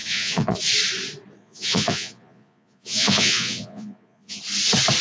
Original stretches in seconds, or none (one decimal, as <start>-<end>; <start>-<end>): 0.6-1.4; 4.4-5.0

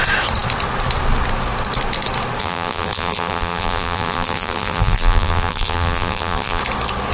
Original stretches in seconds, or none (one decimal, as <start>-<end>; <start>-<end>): 0.0-2.4; 6.6-7.1

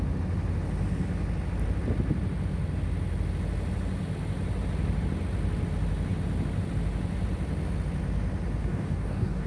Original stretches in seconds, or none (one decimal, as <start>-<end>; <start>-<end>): 0.0-8.6